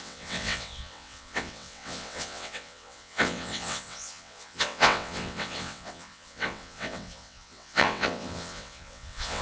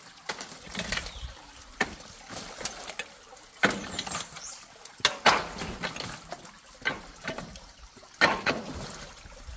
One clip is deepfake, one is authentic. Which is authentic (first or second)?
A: second